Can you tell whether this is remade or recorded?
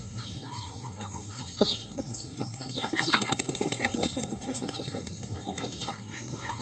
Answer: remade